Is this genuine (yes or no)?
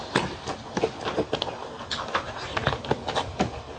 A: yes